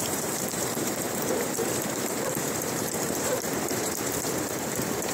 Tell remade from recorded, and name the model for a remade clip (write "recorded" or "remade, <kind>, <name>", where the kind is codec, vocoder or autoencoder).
remade, vocoder, BigVGAN v2